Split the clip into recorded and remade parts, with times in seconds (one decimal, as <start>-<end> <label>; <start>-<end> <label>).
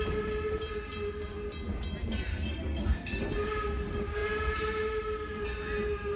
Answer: 0.0-2.3 recorded; 2.3-3.2 remade; 3.2-6.2 recorded